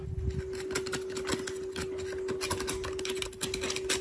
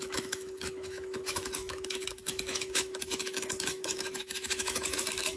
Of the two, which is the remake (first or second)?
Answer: second